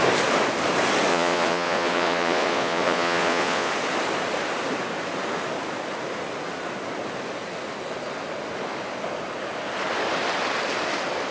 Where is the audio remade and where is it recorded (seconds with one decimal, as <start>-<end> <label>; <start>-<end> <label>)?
0.0-1.1 recorded; 1.1-3.7 remade; 3.7-11.3 recorded